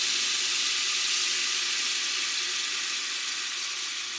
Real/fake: real